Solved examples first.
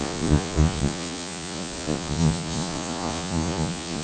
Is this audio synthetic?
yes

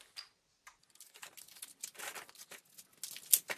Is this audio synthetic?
no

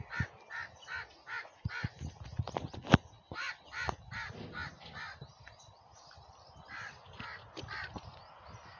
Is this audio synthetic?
no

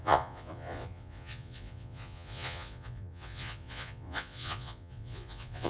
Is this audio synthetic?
yes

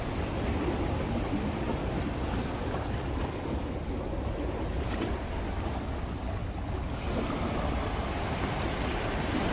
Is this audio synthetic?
no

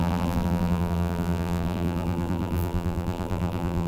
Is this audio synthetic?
yes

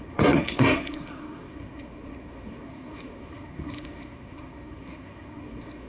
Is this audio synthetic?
yes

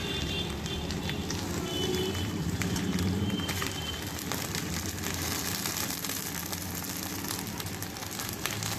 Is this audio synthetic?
yes